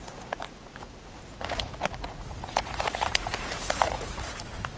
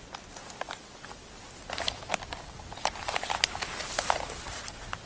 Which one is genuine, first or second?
second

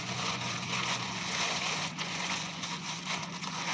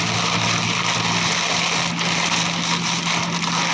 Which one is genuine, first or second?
second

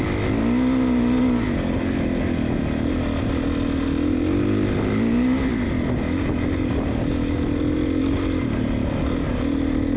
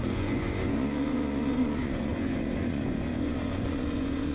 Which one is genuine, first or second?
first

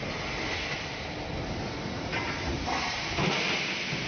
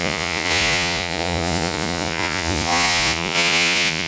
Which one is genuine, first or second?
first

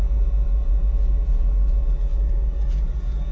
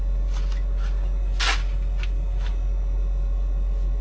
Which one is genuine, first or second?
second